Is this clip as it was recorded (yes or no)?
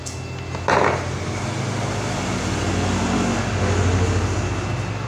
yes